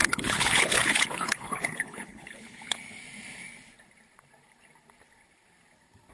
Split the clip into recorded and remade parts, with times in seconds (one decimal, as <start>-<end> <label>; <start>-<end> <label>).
0.0-3.0 remade; 3.0-6.1 recorded